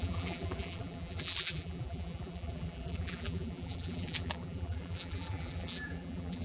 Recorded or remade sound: remade